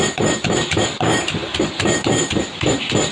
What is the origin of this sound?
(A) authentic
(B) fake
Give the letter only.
A